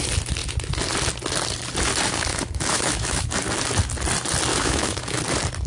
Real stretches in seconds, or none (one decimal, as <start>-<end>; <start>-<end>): 0.0-2.3; 3.3-4.5; 5.2-5.7